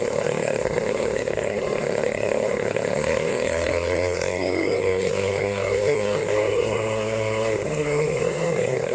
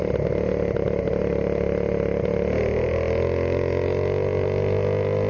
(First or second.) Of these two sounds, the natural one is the second